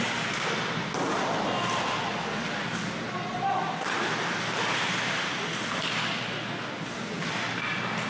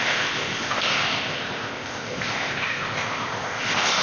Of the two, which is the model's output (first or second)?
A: second